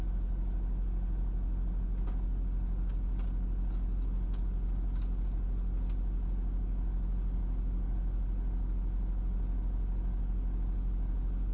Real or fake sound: real